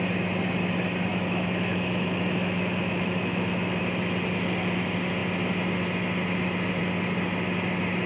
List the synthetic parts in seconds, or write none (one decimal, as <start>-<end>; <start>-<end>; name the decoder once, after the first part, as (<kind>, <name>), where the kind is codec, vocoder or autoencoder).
1.1-3.8 (autoencoder, DAC-VAE)